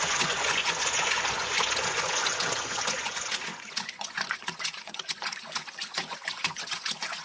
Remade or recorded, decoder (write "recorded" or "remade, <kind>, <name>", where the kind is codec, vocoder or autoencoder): remade, vocoder, Vocos